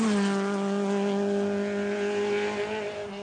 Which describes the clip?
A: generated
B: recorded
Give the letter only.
B